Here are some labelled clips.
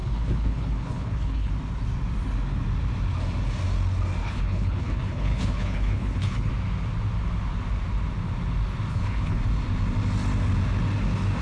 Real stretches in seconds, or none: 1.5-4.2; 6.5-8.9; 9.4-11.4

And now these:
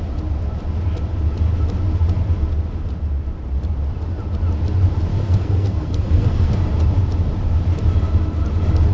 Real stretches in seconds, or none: 0.0-5.1; 6.6-8.9

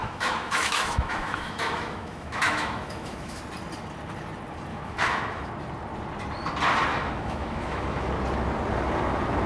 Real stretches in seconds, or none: 3.4-4.7; 5.5-6.9; 8.1-9.5

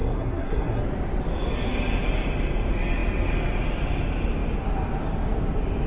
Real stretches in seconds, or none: 0.8-5.9

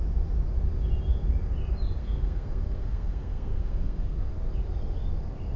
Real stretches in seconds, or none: 0.0-2.0; 4.3-5.6

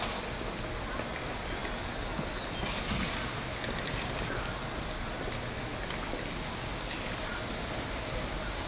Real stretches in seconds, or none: 0.0-8.7

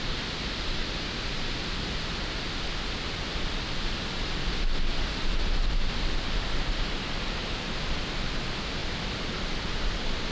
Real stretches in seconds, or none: 0.0-10.3

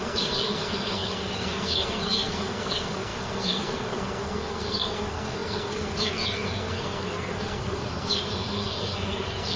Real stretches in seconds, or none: none